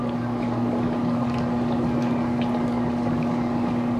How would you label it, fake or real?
fake